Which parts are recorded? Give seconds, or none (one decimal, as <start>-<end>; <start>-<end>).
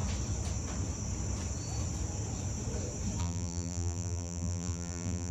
0.0-3.2